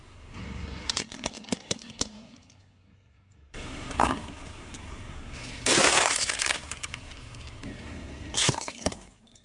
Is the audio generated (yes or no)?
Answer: yes